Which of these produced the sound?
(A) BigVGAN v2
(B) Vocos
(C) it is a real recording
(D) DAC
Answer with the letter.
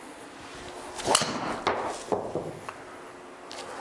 C